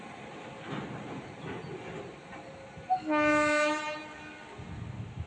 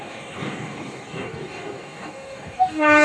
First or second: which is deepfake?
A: second